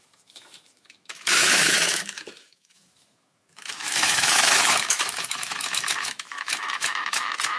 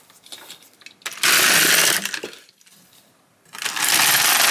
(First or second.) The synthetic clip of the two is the first